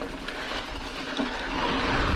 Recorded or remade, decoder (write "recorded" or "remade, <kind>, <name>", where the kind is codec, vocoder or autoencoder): recorded